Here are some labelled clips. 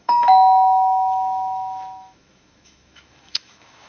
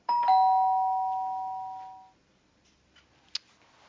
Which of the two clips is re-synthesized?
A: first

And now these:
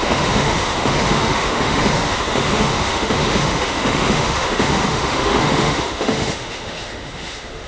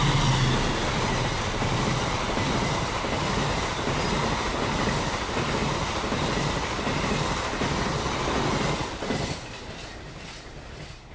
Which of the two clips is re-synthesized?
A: first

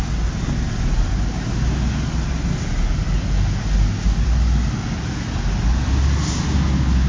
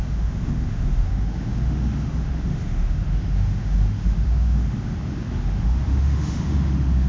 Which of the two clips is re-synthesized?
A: second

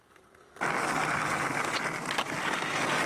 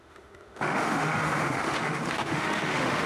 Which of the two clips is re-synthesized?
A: second